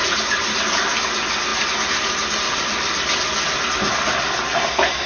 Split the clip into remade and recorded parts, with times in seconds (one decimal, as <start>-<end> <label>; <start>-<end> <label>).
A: 0.0-0.7 remade; 0.7-5.1 recorded